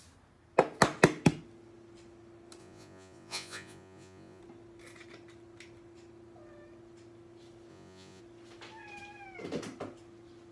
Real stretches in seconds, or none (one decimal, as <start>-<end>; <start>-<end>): 0.0-2.6; 4.4-7.7; 8.2-10.5